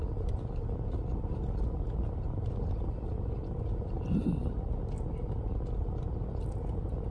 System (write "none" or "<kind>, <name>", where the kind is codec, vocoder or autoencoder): none